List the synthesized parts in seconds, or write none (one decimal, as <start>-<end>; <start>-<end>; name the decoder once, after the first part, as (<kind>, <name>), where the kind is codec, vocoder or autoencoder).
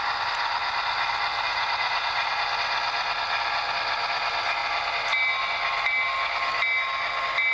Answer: 1.3-2.4 (vocoder, Vocos)